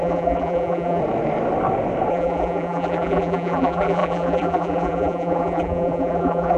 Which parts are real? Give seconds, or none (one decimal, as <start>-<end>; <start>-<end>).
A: 1.0-2.1